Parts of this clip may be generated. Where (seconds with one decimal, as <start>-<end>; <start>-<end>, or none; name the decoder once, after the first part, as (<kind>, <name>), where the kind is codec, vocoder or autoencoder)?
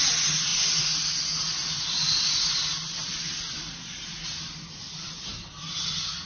none